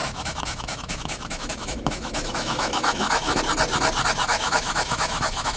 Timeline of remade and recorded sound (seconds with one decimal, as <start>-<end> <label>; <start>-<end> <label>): 0.0-3.4 remade; 3.4-4.3 recorded; 4.3-5.6 remade